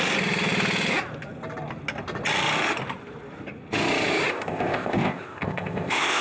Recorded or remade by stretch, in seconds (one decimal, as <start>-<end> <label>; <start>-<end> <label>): 0.0-4.3 recorded; 4.3-6.2 remade